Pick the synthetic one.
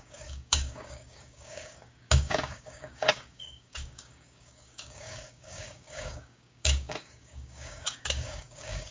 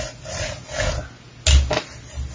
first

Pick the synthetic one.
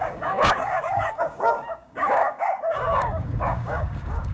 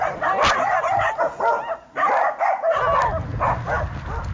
first